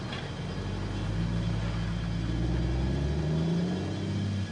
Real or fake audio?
real